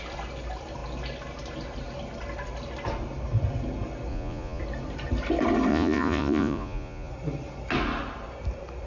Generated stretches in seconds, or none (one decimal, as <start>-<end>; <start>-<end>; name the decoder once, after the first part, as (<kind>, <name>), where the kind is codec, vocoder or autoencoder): 4.1-4.6 (vocoder, Vocos); 5.7-7.1